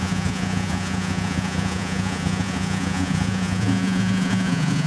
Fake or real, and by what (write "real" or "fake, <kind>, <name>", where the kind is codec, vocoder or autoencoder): fake, vocoder, Vocos